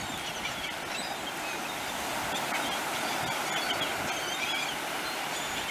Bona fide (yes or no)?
yes